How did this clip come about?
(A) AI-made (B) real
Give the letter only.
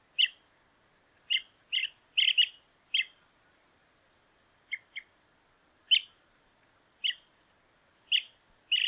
B